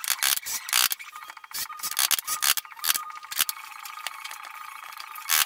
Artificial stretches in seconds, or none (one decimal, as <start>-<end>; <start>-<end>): none